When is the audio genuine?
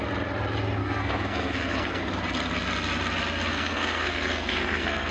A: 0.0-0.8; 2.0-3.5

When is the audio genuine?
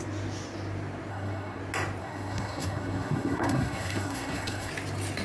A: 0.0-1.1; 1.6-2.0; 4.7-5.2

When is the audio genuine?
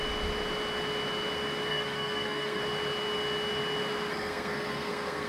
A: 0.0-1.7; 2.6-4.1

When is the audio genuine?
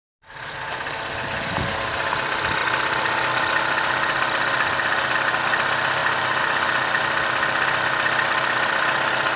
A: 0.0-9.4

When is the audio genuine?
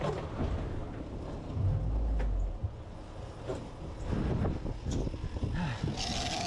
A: 0.0-6.5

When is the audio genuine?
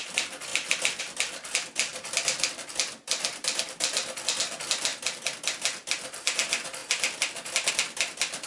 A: 0.0-1.9; 4.4-8.5